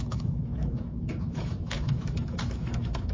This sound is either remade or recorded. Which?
remade